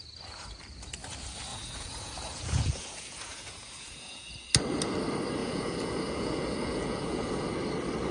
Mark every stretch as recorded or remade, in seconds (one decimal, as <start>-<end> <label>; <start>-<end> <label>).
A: 0.0-1.5 recorded; 1.5-4.3 remade; 4.3-5.4 recorded; 5.4-7.5 remade; 7.5-8.1 recorded

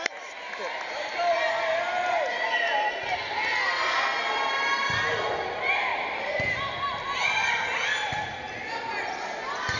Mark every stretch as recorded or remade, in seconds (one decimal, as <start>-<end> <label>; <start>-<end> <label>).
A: 0.0-9.8 recorded

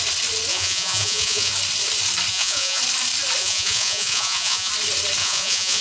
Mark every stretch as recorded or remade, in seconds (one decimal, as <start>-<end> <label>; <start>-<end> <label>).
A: 0.0-0.5 recorded; 0.5-1.5 remade; 1.5-2.3 recorded; 2.3-2.8 remade; 2.8-3.4 recorded; 3.4-4.7 remade; 4.7-5.2 recorded; 5.2-5.8 remade

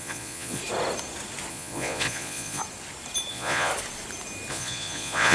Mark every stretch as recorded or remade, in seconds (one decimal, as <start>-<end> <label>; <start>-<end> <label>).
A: 0.0-0.6 remade; 0.6-1.5 recorded; 1.5-2.6 remade; 2.6-3.3 recorded; 3.3-3.7 remade; 3.7-4.5 recorded; 4.5-5.3 remade